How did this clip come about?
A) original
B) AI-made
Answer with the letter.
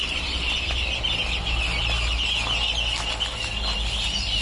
A